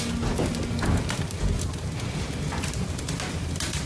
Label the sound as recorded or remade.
recorded